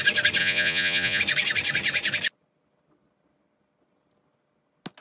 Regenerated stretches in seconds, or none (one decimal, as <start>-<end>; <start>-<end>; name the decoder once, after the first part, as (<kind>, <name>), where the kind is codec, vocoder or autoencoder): 0.4-1.2 (vocoder, Vocos)